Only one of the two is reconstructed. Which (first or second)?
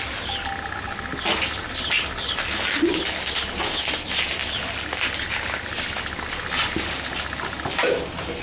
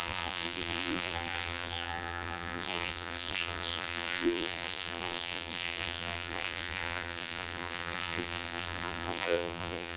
second